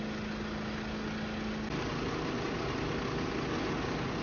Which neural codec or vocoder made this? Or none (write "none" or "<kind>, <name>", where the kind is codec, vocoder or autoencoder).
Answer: none